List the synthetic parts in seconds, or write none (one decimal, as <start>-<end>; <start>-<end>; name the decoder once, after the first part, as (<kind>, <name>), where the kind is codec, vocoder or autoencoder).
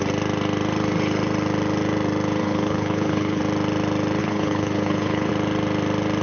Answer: 2.4-3.4 (codec, HILCodec); 4.2-5.3